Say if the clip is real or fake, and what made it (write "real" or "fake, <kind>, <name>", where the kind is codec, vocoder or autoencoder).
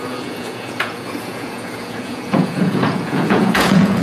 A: fake, vocoder, Vocos